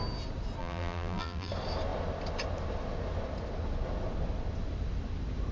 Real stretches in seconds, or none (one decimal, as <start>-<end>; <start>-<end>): 0.0-0.6; 1.5-5.5